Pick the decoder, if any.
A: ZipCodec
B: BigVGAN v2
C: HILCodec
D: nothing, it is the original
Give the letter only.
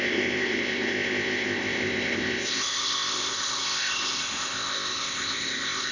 A